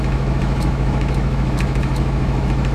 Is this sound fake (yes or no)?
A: yes